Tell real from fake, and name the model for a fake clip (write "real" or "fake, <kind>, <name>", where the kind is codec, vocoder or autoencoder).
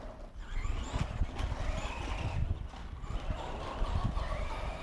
real